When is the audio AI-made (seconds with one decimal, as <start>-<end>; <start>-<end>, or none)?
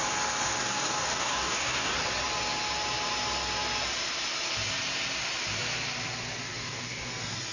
0.6-1.9; 6.5-7.1